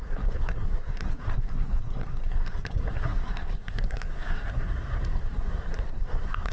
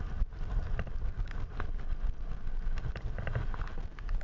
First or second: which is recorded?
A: second